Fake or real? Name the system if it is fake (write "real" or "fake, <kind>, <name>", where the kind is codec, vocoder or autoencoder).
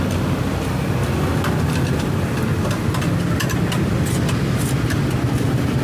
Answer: real